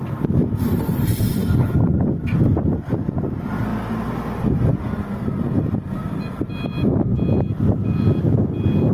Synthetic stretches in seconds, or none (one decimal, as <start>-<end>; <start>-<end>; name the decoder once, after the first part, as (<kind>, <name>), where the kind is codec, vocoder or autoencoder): none